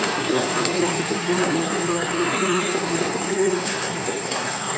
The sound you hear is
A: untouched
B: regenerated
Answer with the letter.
B